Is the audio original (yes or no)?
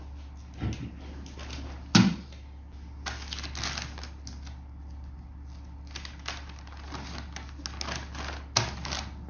yes